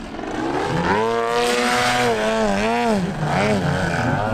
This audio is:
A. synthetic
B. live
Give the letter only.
B